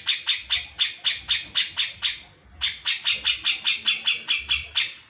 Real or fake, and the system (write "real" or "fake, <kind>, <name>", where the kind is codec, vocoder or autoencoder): real